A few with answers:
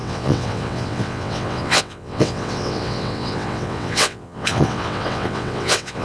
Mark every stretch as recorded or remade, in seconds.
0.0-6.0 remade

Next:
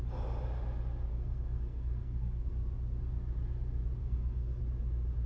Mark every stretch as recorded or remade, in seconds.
0.0-1.1 recorded; 1.1-2.5 remade; 2.5-4.0 recorded; 4.0-4.6 remade; 4.6-5.3 recorded

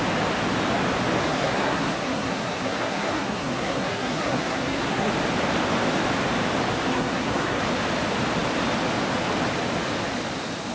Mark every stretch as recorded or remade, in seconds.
0.0-1.2 recorded; 1.2-5.1 remade; 5.1-6.9 recorded; 6.9-7.6 remade; 7.6-10.7 recorded

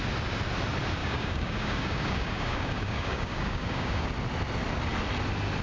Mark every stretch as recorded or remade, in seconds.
0.0-1.0 recorded; 1.0-4.1 remade; 4.1-5.6 recorded

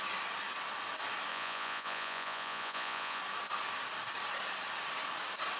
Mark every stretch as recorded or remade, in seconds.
0.0-1.3 recorded; 1.3-3.2 remade; 3.2-5.6 recorded

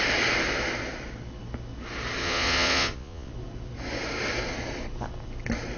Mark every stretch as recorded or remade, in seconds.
0.0-2.2 recorded; 2.2-3.3 remade; 3.3-5.8 recorded